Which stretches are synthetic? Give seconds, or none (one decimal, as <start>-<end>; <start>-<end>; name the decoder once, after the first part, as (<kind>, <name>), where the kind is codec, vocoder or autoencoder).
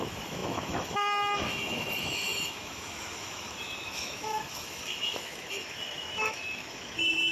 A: 0.0-7.3 (autoencoder, DAC-VAE)